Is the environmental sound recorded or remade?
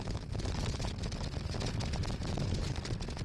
recorded